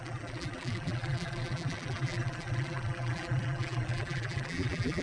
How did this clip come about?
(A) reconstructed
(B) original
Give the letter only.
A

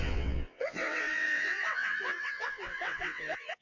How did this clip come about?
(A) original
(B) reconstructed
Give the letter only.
B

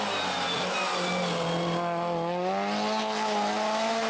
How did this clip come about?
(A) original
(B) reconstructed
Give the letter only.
A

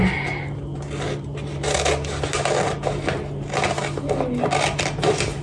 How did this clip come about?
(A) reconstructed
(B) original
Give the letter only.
B